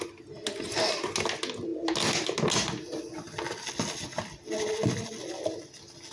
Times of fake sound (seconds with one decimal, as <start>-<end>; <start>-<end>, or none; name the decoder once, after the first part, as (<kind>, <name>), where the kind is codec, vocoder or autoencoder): none